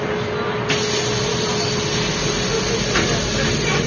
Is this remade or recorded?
recorded